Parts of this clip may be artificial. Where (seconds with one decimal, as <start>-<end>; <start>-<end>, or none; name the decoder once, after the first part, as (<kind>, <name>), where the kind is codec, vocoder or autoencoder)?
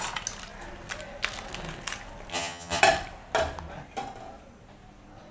2.3-2.8 (vocoder, HiFi-GAN)